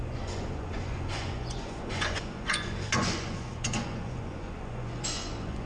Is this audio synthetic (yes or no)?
yes